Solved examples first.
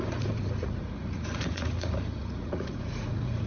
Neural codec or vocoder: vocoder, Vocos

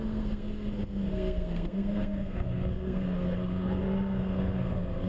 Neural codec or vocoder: codec, SNAC